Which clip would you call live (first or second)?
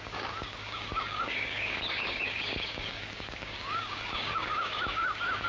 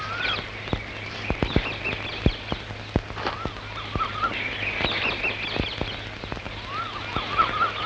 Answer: second